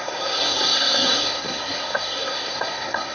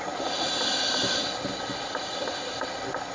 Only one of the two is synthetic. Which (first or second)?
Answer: first